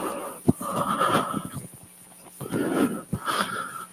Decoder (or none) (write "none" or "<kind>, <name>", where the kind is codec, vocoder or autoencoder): none